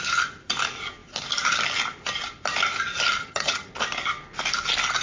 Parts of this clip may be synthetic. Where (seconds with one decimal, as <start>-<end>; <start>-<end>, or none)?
3.2-3.7